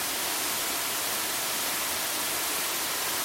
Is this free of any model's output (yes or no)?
yes